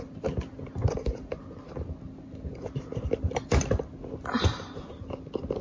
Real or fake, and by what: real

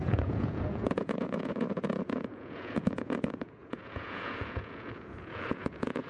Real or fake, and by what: fake, vocoder, Vocos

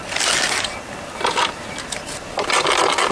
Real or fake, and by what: real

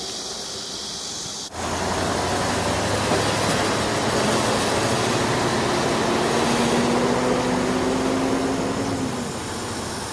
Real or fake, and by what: real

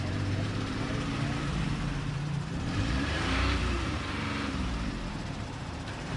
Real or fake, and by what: fake, vocoder, BigVGAN v2